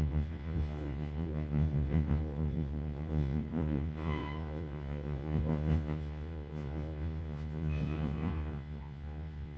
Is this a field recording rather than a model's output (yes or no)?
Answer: no